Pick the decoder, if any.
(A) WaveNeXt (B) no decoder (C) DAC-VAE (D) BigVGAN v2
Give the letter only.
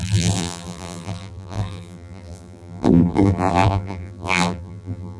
D